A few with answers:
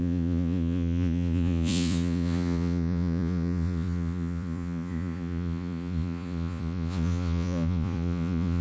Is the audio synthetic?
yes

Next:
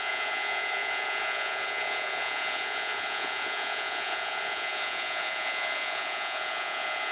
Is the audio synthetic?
yes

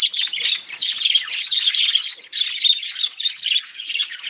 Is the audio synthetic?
no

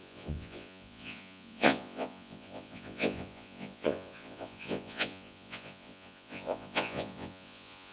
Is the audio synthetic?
yes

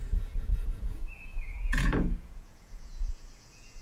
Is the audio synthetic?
yes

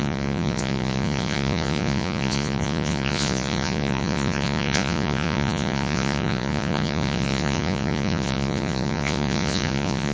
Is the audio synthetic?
yes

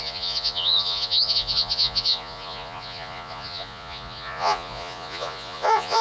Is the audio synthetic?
yes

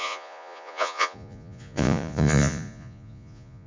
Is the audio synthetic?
yes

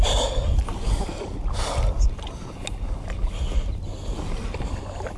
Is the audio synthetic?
no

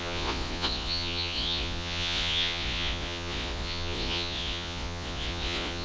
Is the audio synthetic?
yes